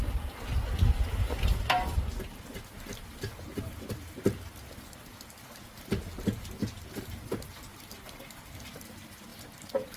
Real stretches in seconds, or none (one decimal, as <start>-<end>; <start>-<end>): 0.0-3.5; 4.5-10.0